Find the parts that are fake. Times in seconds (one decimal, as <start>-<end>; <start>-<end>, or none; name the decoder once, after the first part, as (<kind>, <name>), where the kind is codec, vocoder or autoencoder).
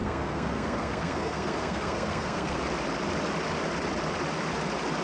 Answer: 0.0-2.6 (codec, SNAC)